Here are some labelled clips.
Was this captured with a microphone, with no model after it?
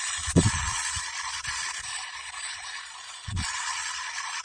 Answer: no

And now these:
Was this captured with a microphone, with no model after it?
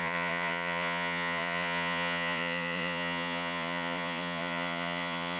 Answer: no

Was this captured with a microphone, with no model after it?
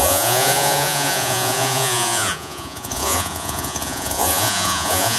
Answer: no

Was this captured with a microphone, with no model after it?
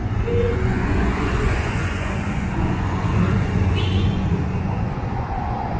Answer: no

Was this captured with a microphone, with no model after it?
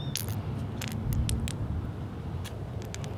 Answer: yes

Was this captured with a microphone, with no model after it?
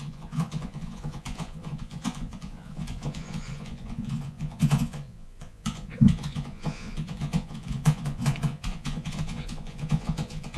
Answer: no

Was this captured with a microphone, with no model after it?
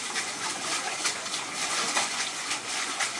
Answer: no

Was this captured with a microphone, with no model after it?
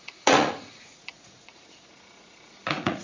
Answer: no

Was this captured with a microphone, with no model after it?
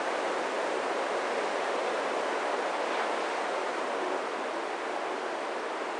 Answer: yes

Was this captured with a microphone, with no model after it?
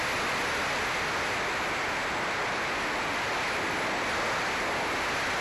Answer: yes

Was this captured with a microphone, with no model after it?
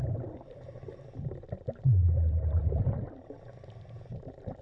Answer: yes